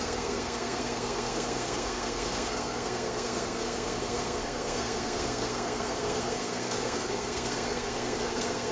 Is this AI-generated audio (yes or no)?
yes